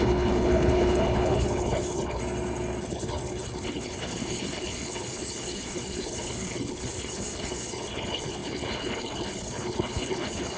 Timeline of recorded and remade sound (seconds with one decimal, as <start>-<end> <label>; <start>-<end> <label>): 0.0-2.2 remade; 2.2-2.8 recorded; 2.8-10.6 remade

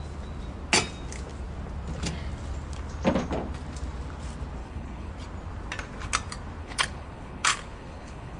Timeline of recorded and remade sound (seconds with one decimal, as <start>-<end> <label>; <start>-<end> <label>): 0.0-4.6 recorded; 4.6-5.1 remade; 5.1-6.6 recorded; 6.6-8.4 remade

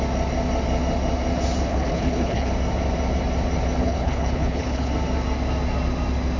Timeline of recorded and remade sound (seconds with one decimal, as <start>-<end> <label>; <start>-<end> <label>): 0.0-1.7 recorded; 1.7-2.5 remade; 2.5-3.8 recorded; 3.8-4.9 remade; 4.9-6.4 recorded

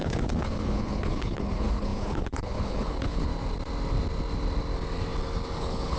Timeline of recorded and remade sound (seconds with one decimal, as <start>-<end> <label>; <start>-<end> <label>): 0.0-3.3 remade; 3.3-5.6 recorded; 5.6-6.0 remade

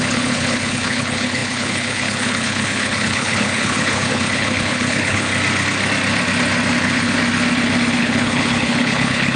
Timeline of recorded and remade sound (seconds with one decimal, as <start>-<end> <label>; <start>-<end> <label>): 0.0-5.3 remade; 5.3-6.8 recorded; 6.8-7.2 remade; 7.2-8.0 recorded; 8.0-9.4 remade

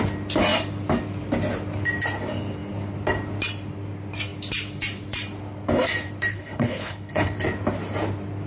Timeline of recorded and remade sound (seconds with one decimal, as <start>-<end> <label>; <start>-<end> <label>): 0.0-6.3 recorded; 6.3-7.3 remade; 7.3-8.5 recorded

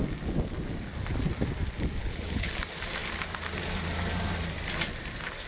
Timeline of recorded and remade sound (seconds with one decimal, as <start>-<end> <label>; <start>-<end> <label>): 0.0-2.0 recorded; 2.0-2.5 remade; 2.5-5.5 recorded